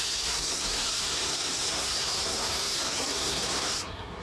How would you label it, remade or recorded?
remade